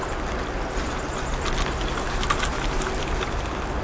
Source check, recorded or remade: recorded